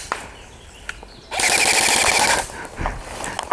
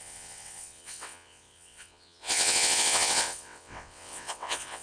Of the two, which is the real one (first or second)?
first